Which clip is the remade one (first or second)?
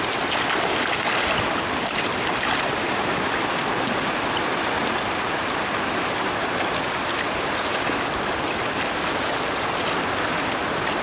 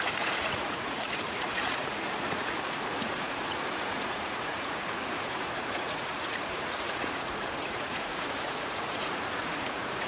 second